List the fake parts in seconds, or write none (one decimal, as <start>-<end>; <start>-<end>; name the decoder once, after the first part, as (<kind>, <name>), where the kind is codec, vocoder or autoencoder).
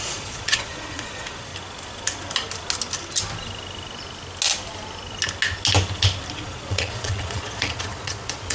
0.0-1.5 (vocoder, Vocos); 6.3-8.5